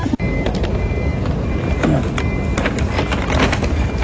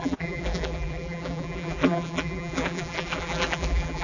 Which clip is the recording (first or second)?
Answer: first